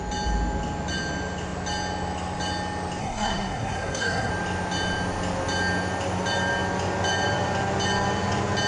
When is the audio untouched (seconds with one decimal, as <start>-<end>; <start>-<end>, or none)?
0.0-3.0; 4.3-8.7